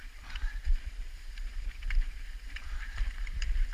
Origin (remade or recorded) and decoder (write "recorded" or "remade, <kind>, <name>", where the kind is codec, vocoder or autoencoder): remade, vocoder, BigVGAN v2